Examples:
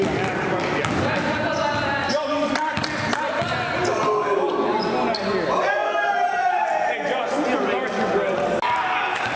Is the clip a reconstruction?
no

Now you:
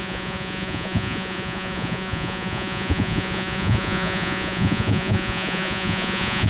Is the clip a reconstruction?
yes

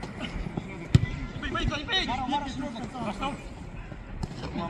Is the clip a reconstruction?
no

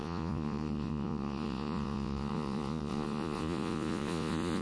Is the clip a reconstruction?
yes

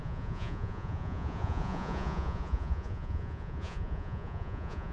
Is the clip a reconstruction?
yes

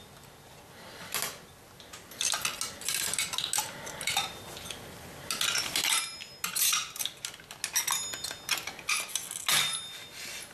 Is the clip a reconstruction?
no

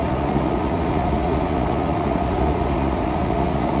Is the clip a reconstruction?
yes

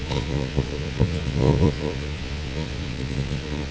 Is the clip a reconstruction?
yes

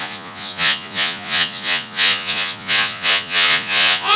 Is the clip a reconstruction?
yes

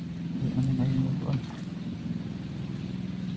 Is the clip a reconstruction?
no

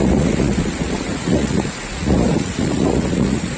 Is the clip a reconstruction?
yes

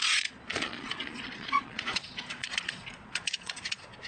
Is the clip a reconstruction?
yes